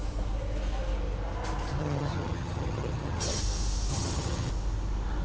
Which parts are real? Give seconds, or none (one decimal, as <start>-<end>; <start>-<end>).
0.0-1.8; 3.4-3.9; 4.5-5.2